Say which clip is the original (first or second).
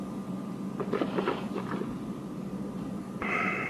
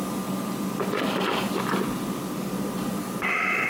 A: second